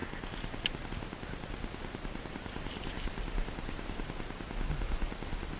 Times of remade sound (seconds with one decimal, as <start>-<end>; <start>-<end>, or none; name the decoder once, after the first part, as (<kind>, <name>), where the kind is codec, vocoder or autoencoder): none